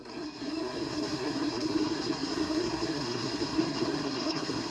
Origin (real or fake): fake